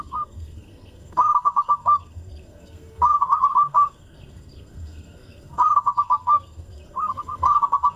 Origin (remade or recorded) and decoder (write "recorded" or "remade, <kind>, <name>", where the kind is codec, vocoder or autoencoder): remade, codec, SNAC